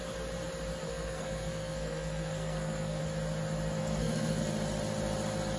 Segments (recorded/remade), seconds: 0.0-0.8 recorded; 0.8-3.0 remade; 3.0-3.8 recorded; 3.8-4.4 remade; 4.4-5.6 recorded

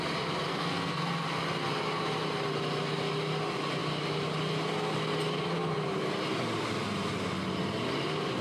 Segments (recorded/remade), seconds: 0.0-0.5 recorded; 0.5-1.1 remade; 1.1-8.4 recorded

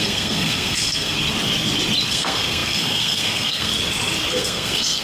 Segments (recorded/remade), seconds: 0.0-1.2 remade; 1.2-2.1 recorded; 2.1-3.7 remade; 3.7-4.3 recorded; 4.3-5.0 remade

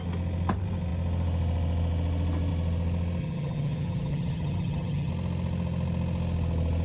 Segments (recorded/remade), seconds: 0.0-3.2 recorded; 3.2-5.1 remade; 5.1-6.8 recorded

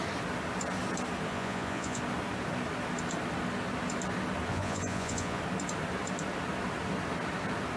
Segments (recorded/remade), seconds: 0.0-1.3 recorded; 1.3-2.0 remade; 2.0-4.5 recorded; 4.5-5.4 remade; 5.4-7.8 recorded